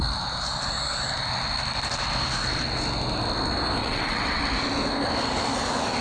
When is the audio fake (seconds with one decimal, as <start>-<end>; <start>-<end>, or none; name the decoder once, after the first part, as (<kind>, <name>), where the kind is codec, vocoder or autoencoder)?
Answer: 3.8-4.4 (vocoder, WaveNeXt)